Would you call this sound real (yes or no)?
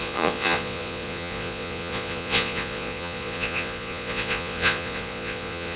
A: no